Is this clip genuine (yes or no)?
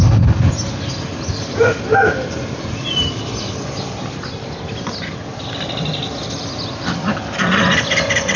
yes